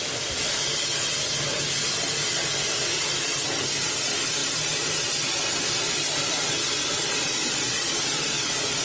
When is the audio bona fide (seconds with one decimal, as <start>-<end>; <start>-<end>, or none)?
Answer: 0.0-8.8